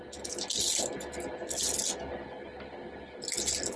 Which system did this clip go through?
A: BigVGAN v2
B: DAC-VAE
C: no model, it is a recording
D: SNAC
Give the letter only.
C